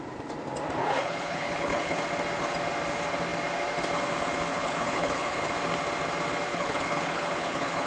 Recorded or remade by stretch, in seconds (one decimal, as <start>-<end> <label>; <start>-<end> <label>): 0.0-0.8 recorded; 0.8-2.0 remade; 2.0-4.5 recorded; 4.5-5.5 remade; 5.5-6.5 recorded; 6.5-7.9 remade